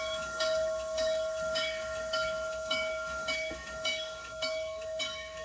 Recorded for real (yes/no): no